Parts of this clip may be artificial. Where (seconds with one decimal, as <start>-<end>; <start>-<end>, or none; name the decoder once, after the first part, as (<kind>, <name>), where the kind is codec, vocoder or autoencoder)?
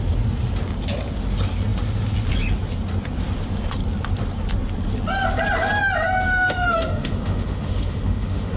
6.3-8.6 (autoencoder, DAC-VAE)